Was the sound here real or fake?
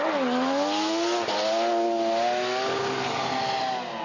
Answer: real